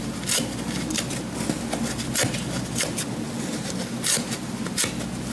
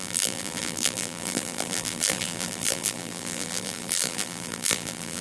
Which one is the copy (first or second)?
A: second